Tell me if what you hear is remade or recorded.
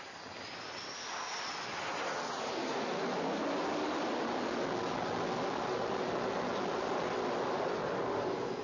recorded